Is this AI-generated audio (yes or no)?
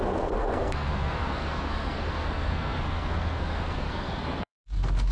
yes